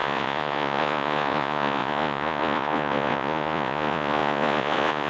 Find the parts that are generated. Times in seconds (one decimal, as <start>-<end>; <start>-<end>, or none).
0.0-5.1

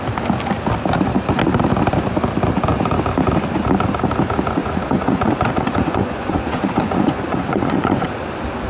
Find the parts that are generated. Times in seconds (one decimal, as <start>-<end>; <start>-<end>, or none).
4.6-8.1